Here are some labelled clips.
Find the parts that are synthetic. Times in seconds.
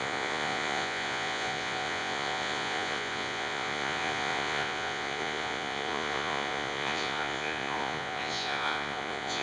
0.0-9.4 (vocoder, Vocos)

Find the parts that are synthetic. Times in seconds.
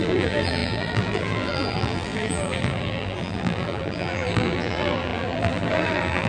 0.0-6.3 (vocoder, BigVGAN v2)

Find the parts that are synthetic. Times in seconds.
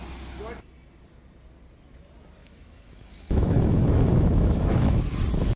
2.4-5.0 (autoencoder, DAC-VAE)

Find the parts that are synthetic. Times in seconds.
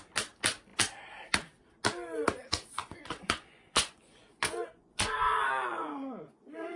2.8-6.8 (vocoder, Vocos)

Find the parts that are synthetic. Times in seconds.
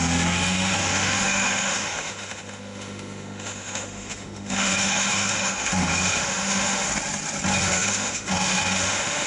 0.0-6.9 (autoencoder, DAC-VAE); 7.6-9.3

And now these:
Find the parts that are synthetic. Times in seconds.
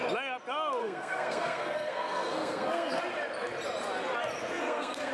0.8-3.0 (codec, SNAC); 4.4-5.1